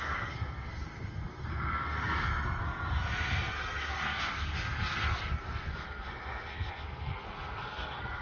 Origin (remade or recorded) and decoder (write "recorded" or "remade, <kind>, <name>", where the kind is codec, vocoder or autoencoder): remade, codec, SNAC